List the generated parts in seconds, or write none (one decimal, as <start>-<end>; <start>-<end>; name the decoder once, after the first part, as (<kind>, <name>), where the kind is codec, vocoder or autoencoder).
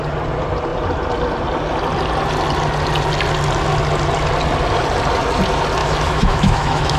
5.8-7.0 (autoencoder, DAC-VAE)